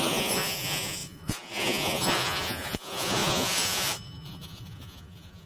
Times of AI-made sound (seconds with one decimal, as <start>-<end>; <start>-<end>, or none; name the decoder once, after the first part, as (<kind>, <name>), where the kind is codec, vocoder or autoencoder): 0.0-5.5 (vocoder, Vocos)